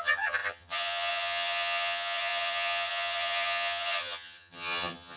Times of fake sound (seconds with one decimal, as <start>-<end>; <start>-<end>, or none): 0.0-5.2